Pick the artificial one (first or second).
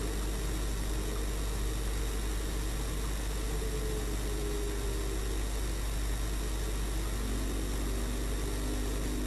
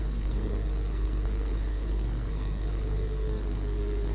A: second